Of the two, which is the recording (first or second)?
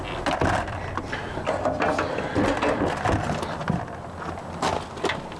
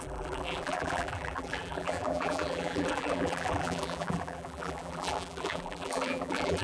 first